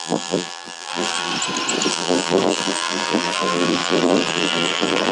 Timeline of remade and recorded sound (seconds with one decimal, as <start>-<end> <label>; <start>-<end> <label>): 0.0-1.3 remade; 1.3-1.9 recorded; 1.9-5.1 remade